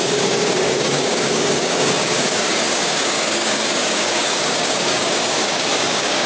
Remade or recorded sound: remade